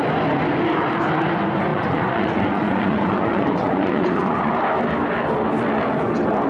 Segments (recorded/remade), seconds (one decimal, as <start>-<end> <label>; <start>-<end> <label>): 0.0-1.7 recorded; 1.7-4.5 remade; 4.5-6.5 recorded